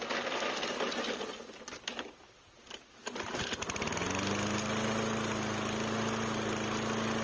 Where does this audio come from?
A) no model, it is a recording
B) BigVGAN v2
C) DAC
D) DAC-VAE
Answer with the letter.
A